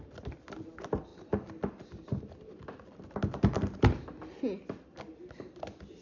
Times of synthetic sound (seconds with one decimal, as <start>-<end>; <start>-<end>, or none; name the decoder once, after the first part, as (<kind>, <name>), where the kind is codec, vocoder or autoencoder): none